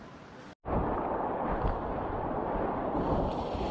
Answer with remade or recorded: recorded